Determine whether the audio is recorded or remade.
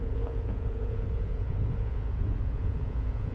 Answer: remade